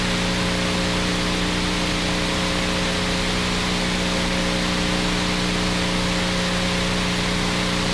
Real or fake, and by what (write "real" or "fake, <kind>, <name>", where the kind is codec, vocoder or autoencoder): real